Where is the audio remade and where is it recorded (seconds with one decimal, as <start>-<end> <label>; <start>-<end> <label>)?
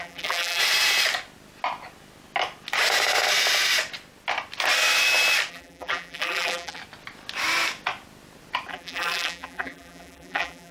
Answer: 0.0-0.6 remade; 0.6-5.5 recorded; 5.5-6.8 remade; 6.8-8.7 recorded; 8.7-10.7 remade